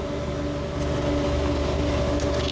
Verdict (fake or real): real